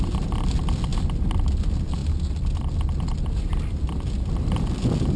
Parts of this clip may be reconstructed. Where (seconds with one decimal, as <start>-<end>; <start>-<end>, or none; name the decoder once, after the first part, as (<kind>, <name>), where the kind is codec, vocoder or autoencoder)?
none